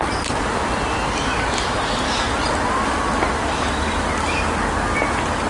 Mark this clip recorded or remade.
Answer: recorded